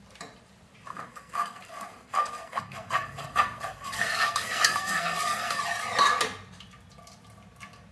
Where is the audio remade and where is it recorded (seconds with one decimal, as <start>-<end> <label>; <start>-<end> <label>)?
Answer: 0.0-0.9 recorded; 0.9-5.6 remade; 5.6-7.9 recorded